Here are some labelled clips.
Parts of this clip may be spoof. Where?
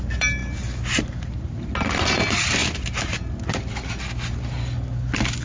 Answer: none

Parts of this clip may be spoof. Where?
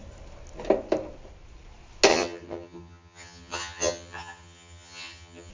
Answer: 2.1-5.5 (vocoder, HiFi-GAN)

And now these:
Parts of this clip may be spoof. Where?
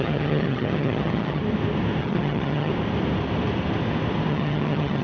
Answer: 0.0-1.4 (vocoder, HiFi-GAN); 2.0-2.7; 4.3-5.0